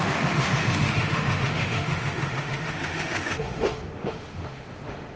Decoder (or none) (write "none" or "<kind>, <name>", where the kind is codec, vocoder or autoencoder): autoencoder, DAC-VAE